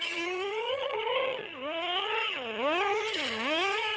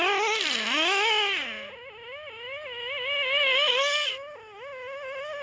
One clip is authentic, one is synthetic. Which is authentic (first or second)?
second